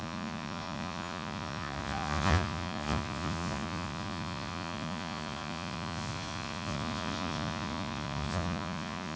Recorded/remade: remade